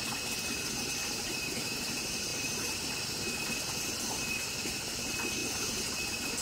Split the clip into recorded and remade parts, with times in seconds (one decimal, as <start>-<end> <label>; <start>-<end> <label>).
0.0-1.0 recorded; 1.0-1.9 remade; 1.9-2.3 recorded; 2.3-2.9 remade; 2.9-6.4 recorded